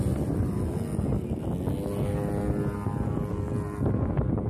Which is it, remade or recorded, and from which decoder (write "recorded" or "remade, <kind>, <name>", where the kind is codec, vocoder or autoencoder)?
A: recorded